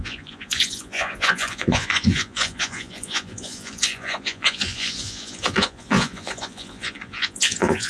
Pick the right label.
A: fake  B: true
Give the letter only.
A